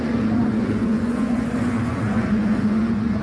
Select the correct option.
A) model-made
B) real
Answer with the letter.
A